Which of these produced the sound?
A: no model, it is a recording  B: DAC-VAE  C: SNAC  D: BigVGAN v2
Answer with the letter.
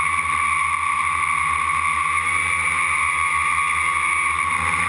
A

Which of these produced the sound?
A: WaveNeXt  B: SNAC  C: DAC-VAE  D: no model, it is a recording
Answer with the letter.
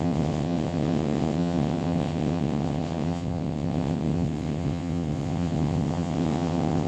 A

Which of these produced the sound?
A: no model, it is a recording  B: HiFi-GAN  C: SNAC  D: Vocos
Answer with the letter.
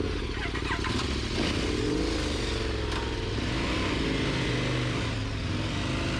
A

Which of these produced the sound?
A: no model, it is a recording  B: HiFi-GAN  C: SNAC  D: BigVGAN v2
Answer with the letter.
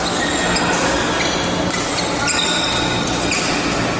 A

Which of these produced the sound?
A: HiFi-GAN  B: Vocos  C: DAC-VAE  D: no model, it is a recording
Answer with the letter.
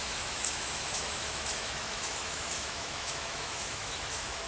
C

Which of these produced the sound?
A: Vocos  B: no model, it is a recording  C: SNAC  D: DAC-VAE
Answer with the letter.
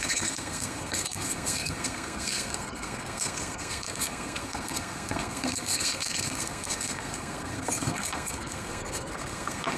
C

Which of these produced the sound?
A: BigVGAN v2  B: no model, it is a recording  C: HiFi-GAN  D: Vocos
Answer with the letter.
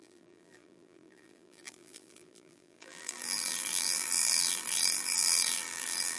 A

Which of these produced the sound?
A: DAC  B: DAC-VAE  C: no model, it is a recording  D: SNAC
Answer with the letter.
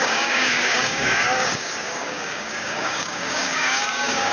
A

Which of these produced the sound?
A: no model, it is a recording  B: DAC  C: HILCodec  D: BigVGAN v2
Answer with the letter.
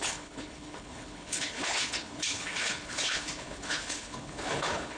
C